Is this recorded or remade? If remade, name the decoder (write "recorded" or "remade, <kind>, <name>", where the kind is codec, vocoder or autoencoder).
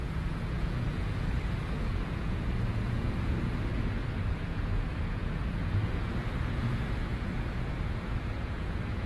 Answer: remade, vocoder, Vocos